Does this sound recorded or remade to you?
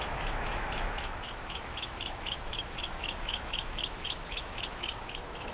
remade